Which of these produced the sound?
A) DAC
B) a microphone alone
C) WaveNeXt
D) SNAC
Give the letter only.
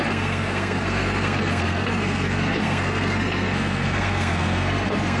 D